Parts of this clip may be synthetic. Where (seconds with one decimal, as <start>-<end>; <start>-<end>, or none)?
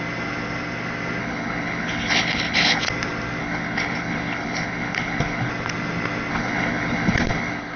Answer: 1.2-2.8; 3.4-5.5; 6.3-7.8